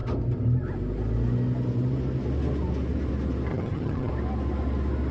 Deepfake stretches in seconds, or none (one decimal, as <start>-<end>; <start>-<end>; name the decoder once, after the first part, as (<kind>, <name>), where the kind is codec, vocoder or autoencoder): 3.5-4.1 (vocoder, HiFi-GAN)